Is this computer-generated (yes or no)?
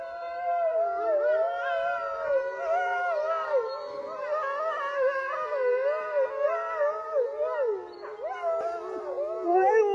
no